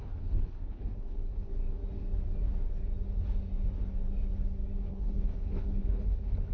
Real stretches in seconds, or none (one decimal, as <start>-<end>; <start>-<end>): 1.6-4.9